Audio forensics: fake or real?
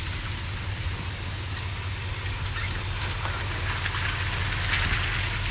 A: real